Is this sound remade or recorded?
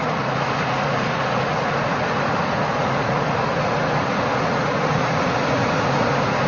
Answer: remade